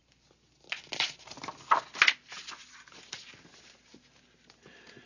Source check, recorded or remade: recorded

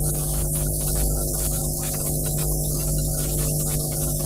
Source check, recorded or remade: remade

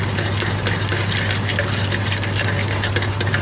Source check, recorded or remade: recorded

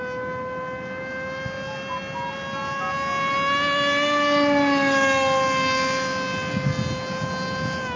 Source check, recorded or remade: recorded